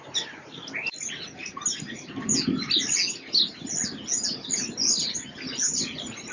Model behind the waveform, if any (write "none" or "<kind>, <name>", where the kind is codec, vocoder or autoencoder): none